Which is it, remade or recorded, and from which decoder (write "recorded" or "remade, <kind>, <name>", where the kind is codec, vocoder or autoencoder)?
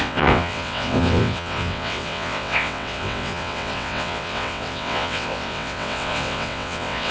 remade, vocoder, WaveNeXt